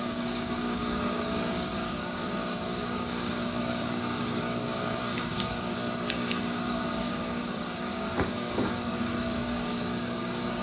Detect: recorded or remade remade